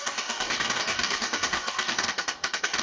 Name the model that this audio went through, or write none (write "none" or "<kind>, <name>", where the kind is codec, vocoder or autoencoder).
codec, DAC